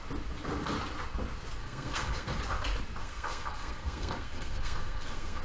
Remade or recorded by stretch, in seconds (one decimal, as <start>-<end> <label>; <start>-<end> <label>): 0.0-1.6 recorded; 1.6-2.4 remade; 2.4-3.0 recorded; 3.0-5.4 remade